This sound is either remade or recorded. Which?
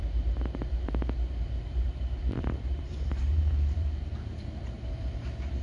remade